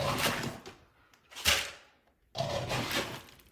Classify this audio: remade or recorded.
recorded